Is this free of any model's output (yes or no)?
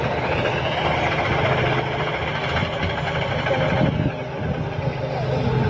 yes